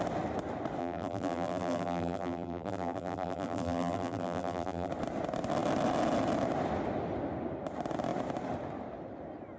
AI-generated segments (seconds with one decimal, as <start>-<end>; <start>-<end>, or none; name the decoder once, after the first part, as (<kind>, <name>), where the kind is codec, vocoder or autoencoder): 0.8-4.9 (vocoder, BigVGAN v2)